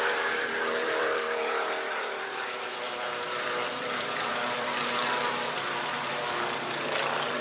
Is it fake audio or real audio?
fake